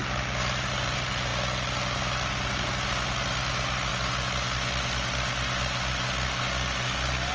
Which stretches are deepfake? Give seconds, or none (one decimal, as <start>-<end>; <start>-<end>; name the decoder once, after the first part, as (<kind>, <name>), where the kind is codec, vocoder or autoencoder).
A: none